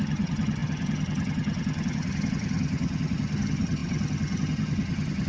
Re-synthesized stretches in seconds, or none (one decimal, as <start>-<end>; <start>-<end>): 0.0-5.3